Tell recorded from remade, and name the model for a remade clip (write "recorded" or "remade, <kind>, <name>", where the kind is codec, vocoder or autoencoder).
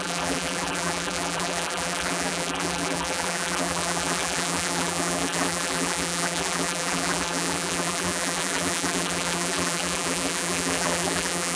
remade, vocoder, BigVGAN v2